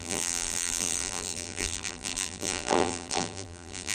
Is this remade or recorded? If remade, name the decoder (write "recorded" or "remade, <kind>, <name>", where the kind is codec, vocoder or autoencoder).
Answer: remade, vocoder, BigVGAN v2